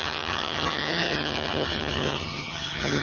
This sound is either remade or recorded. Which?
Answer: remade